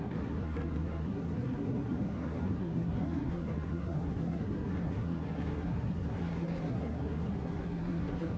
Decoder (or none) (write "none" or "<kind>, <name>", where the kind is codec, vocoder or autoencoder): codec, SNAC